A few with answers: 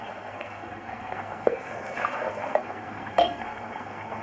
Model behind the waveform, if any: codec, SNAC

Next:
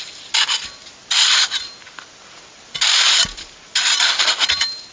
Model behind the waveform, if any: none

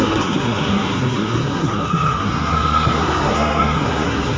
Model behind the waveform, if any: codec, SNAC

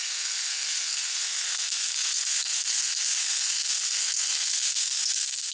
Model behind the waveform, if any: codec, SNAC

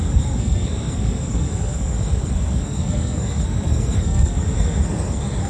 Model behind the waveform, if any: codec, SNAC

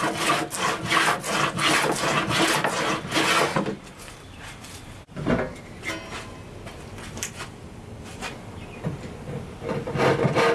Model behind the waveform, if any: none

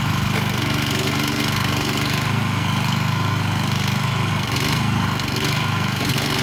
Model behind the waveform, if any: codec, SNAC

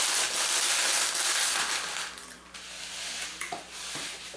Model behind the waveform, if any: none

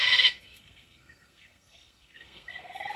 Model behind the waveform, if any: codec, SNAC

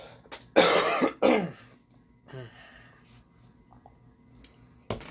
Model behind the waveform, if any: none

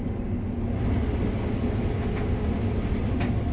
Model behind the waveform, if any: none